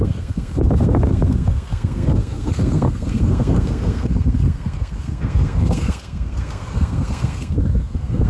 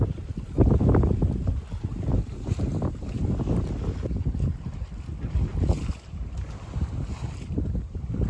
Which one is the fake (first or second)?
first